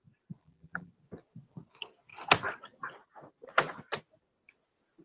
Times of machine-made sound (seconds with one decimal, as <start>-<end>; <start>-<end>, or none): 0.4-0.9